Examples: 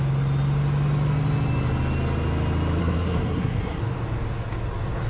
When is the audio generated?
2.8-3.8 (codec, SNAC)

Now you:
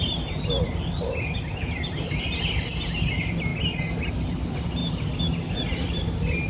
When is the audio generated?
none

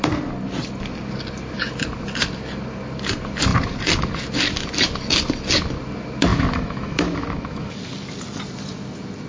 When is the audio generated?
6.3-7.8 (autoencoder, DAC-VAE)

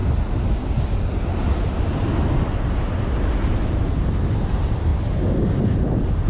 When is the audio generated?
3.8-4.9 (vocoder, BigVGAN v2); 5.6-6.3